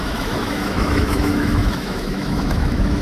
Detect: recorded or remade remade